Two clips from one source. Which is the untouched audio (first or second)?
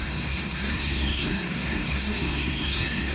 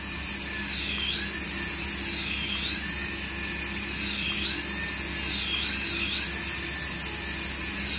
second